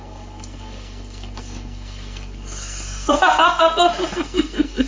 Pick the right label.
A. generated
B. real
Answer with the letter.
A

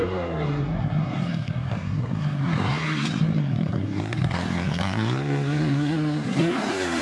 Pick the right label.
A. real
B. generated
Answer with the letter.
B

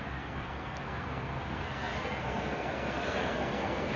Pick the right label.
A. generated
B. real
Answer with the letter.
A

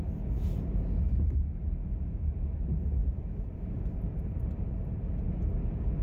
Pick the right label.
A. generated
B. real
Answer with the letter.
B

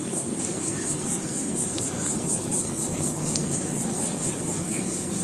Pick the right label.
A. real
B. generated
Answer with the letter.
B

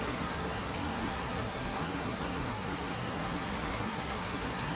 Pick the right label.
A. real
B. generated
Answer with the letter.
B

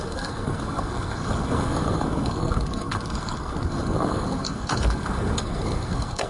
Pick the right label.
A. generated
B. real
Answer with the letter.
A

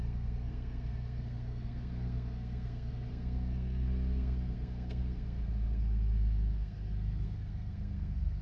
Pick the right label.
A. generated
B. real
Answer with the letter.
A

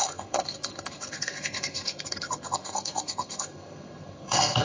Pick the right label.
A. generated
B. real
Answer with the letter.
A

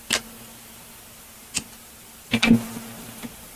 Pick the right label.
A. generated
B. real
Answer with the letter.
B